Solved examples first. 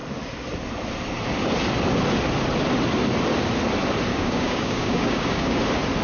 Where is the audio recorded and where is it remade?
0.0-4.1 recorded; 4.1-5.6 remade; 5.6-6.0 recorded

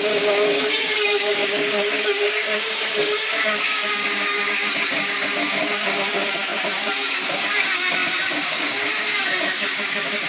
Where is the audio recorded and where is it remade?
0.0-10.3 remade

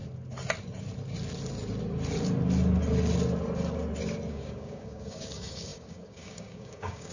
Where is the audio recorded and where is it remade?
0.0-4.3 recorded; 4.3-7.1 remade

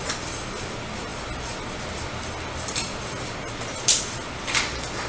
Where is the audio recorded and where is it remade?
0.0-5.1 recorded